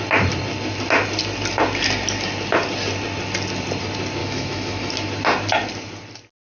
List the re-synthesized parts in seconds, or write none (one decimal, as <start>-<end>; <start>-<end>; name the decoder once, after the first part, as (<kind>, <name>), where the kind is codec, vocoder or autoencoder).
4.2-4.9 (autoencoder, DAC-VAE)